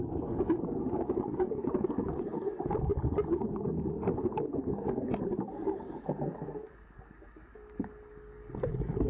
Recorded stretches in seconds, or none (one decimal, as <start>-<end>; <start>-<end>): 2.9-3.5